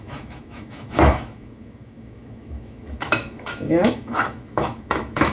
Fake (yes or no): yes